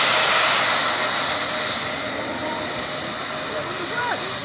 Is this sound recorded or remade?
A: recorded